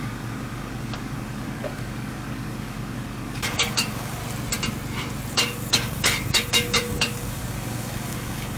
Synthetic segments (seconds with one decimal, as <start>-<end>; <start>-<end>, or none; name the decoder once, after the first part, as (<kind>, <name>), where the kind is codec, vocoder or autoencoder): 0.0-4.2 (codec, DAC); 5.3-8.6